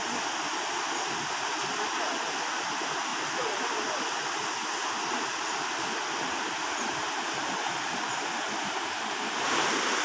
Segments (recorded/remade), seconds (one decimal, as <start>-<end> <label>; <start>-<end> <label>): 0.0-10.0 recorded